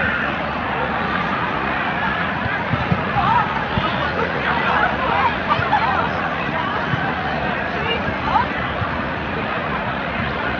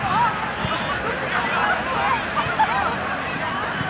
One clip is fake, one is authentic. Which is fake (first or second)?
first